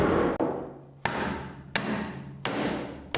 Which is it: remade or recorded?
recorded